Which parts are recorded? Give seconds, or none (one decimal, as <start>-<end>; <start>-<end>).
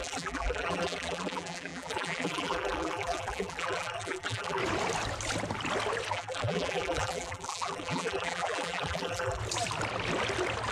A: 4.6-6.1; 9.4-10.7